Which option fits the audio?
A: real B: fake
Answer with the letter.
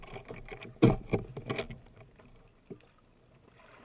A